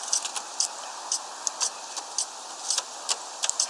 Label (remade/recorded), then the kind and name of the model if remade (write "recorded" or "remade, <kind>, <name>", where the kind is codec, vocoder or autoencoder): recorded